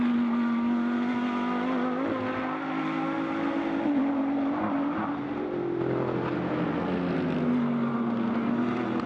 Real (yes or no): yes